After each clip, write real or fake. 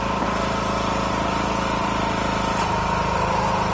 fake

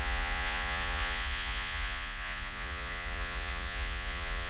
fake